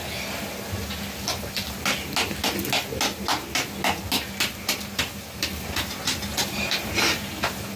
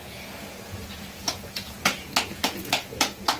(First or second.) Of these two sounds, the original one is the first